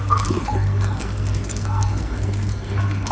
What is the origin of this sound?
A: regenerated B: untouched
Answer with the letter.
A